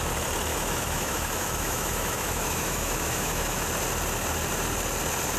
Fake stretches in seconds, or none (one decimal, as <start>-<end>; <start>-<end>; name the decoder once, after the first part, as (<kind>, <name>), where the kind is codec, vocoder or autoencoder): 0.5-3.7 (autoencoder, DAC-VAE)